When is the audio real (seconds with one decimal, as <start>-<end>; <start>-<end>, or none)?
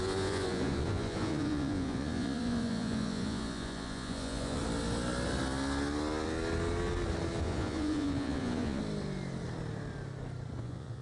4.6-7.4; 8.8-10.6